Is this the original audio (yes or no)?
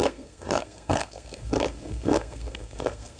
no